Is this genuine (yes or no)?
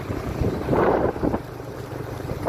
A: no